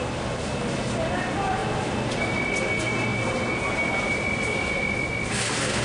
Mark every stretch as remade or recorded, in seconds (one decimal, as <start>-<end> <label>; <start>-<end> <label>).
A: 0.0-5.8 recorded